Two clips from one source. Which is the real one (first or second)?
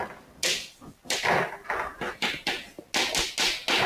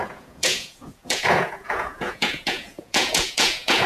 first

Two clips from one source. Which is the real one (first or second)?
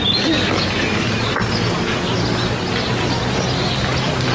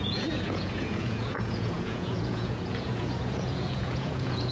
first